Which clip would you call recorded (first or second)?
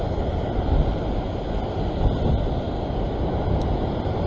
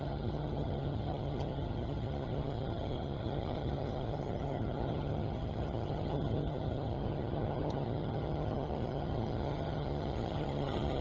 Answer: first